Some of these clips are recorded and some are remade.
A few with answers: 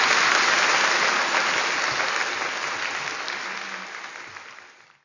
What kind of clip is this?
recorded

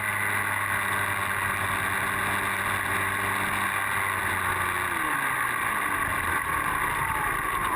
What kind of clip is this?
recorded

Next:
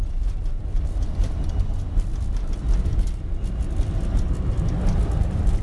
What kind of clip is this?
recorded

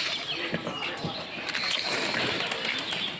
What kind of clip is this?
recorded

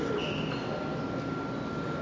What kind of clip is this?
recorded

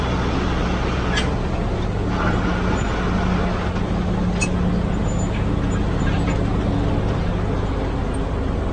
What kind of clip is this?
recorded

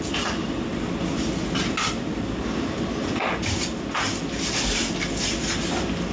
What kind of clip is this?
recorded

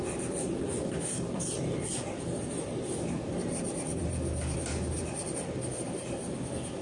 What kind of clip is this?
remade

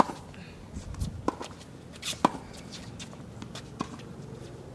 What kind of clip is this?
recorded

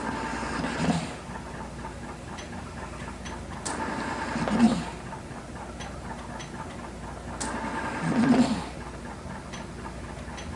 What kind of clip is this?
recorded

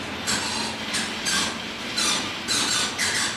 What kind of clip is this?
recorded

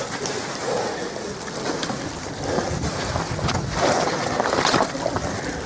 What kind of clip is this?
recorded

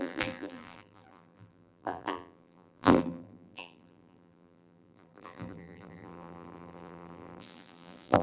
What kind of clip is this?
remade